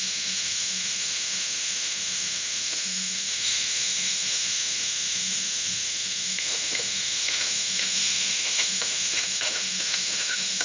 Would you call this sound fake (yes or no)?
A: yes